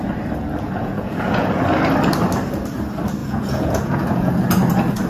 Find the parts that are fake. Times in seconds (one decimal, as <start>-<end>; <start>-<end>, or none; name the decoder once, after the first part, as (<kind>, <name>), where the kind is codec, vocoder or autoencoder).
0.8-1.5 (vocoder, Vocos); 3.2-4.4